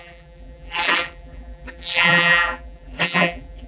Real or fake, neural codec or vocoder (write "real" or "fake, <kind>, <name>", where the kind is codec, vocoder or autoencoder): fake, vocoder, BigVGAN v2